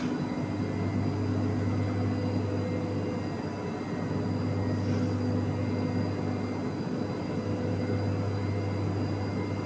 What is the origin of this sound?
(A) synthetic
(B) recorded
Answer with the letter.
B